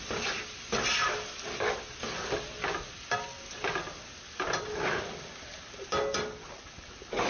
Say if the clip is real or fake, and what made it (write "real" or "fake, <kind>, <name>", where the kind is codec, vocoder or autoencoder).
real